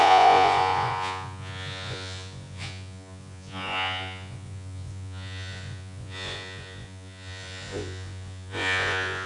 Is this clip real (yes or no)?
no